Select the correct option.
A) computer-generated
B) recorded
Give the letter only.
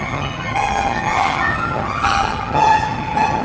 A